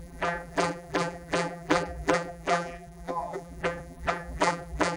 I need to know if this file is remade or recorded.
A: remade